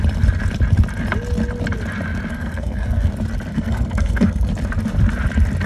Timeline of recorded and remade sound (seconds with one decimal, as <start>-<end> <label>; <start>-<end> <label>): 0.0-2.3 recorded; 2.3-3.1 remade; 3.1-3.5 recorded; 3.5-4.5 remade; 4.5-5.7 recorded